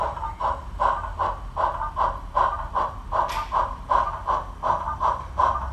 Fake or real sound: real